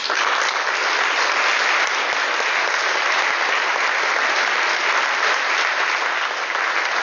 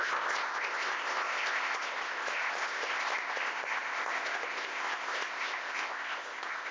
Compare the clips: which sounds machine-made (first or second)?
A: second